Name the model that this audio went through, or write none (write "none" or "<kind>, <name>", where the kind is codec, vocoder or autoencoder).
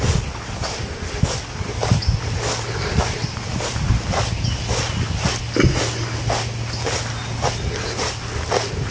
none